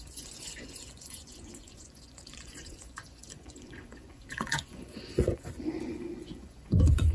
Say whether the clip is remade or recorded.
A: remade